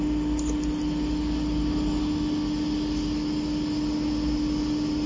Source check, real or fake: real